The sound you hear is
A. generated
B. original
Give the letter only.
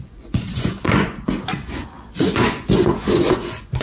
A